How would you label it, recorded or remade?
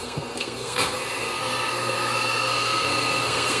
remade